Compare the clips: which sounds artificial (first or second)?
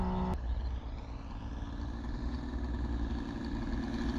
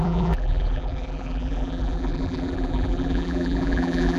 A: second